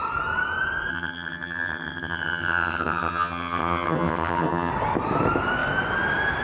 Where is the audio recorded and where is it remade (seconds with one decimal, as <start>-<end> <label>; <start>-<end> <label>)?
0.0-0.9 recorded; 0.9-4.7 remade; 4.7-6.4 recorded